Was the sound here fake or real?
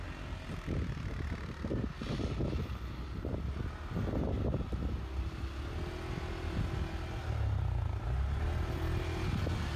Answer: real